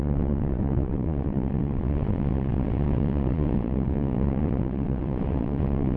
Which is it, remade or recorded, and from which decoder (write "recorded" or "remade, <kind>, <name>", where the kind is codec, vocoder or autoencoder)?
remade, vocoder, WaveNeXt